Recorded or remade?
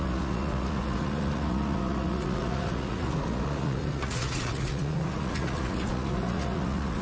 remade